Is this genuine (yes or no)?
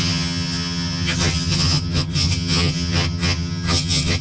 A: no